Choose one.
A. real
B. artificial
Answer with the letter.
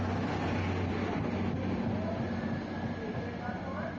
A